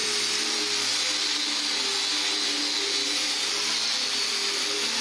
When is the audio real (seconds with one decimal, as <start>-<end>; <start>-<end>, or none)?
0.0-5.0